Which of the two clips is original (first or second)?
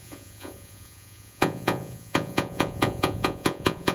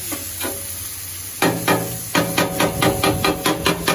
second